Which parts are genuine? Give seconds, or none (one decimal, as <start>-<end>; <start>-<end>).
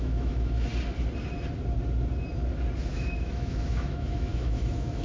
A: 0.7-2.9